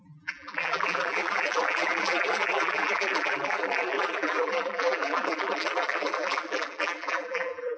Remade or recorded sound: remade